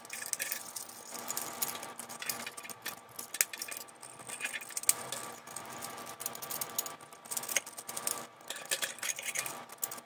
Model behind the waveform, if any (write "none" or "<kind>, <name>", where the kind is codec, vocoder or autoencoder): none